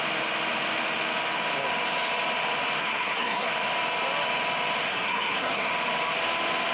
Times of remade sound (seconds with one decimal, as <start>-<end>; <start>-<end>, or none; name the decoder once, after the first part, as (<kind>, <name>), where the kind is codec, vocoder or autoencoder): 2.8-3.5 (codec, SNAC); 4.9-5.7